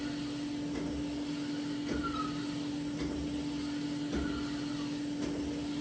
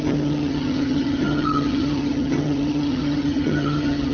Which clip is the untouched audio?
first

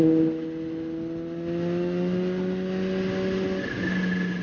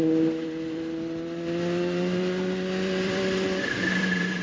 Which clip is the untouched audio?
first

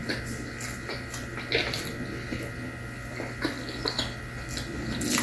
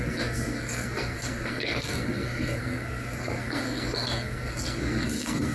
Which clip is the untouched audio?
first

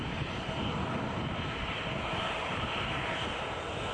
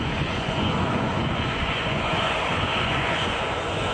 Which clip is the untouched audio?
first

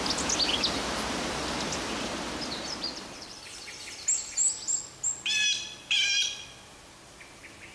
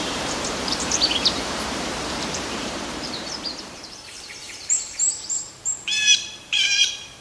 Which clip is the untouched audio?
first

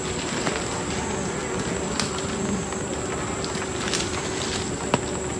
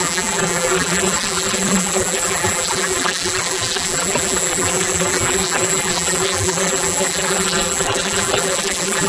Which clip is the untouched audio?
first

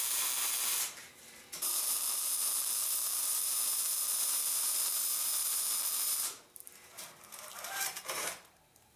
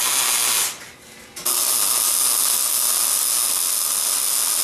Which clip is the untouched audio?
second